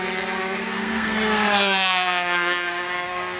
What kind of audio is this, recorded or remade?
remade